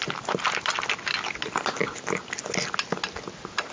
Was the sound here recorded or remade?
recorded